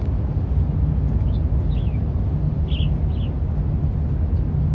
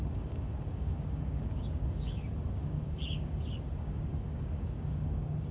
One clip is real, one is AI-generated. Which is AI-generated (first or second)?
second